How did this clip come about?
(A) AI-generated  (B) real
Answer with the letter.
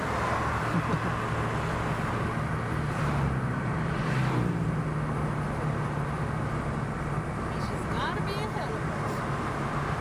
B